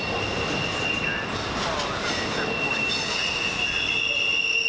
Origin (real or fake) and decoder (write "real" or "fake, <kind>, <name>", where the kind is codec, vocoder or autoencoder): real